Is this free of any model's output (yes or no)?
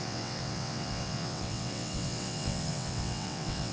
no